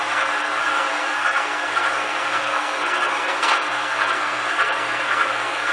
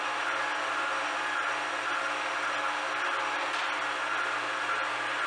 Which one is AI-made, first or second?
first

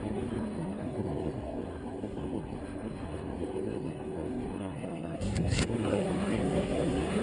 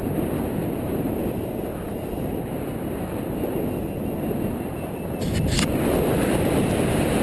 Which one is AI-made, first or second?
first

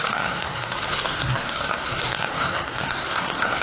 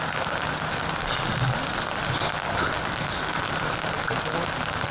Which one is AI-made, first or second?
first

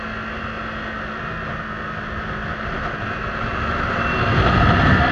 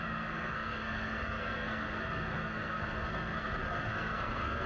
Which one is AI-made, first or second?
second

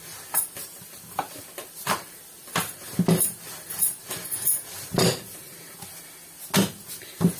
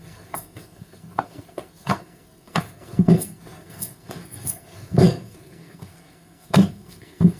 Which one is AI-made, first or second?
second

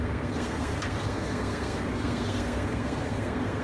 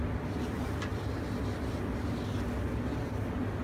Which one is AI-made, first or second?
first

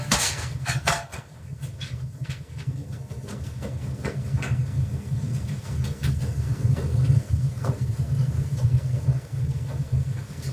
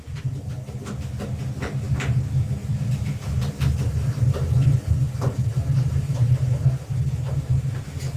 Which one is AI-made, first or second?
first